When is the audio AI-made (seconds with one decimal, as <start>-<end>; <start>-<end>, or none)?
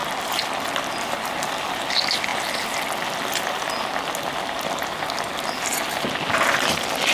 none